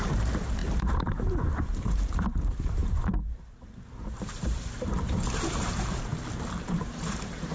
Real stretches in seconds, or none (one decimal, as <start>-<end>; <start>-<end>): 6.1-6.6